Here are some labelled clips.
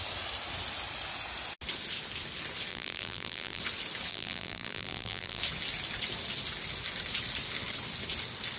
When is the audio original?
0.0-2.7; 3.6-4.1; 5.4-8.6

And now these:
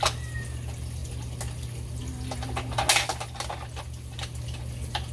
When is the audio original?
0.0-5.1

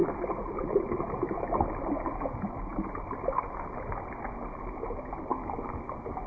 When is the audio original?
0.0-6.3